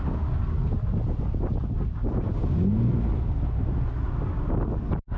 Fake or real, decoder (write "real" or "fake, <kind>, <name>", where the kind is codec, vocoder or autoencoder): real